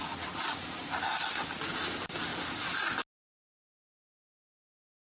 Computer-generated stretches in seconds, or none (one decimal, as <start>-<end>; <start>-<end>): none